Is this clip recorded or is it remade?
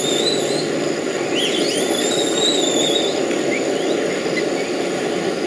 recorded